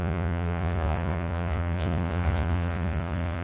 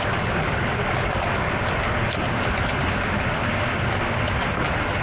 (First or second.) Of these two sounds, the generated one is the first